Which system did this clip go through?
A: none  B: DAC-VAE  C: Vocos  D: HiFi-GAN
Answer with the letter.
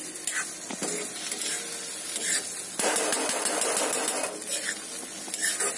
A